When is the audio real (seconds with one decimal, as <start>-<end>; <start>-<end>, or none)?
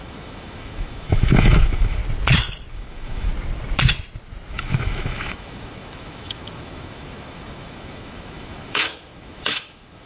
2.0-2.7; 3.3-4.5